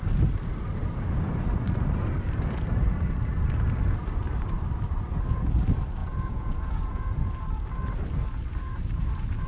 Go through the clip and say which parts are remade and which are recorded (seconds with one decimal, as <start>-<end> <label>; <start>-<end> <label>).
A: 0.0-6.0 recorded; 6.0-7.3 remade; 7.3-9.5 recorded